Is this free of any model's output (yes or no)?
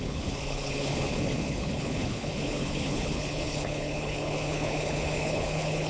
no